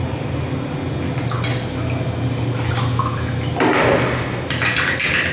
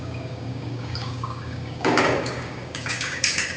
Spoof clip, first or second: second